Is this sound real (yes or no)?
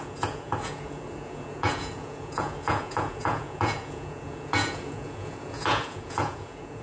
no